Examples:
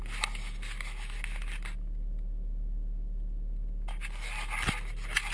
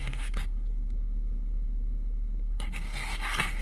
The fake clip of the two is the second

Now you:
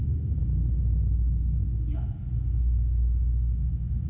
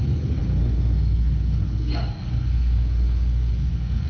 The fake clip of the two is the second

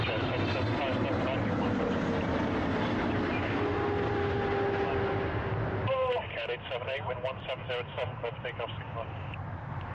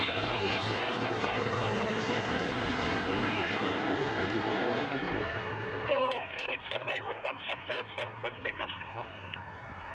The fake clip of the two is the second